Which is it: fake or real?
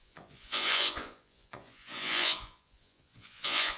fake